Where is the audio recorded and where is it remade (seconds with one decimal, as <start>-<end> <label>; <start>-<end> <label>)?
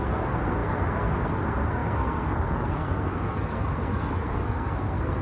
0.0-5.2 remade